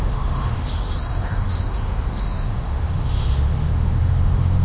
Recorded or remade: remade